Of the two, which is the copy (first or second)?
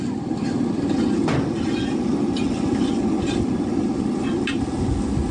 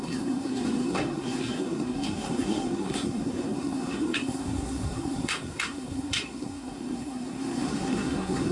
second